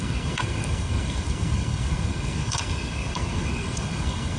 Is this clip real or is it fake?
fake